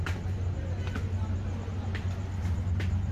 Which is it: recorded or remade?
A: recorded